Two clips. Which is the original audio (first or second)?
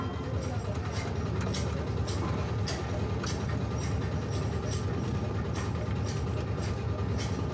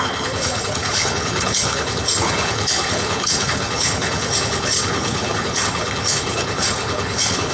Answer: first